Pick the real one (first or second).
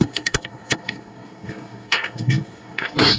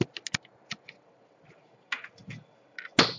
second